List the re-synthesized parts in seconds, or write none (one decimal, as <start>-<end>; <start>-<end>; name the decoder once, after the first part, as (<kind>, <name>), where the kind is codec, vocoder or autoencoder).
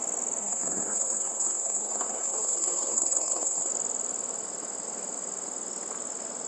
0.4-3.7 (codec, SNAC)